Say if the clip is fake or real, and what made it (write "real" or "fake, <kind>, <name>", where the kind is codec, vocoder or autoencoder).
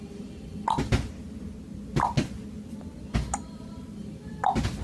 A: real